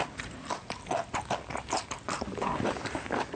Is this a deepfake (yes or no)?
no